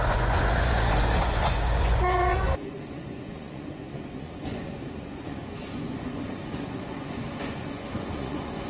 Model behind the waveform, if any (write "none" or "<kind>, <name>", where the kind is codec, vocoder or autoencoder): vocoder, Vocos